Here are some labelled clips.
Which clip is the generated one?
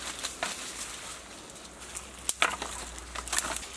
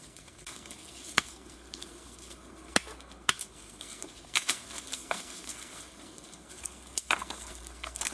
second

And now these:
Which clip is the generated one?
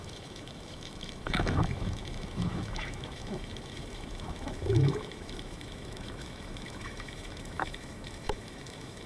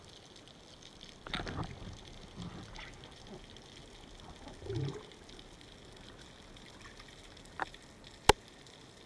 first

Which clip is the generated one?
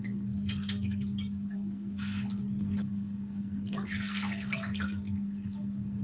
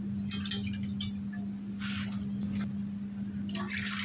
first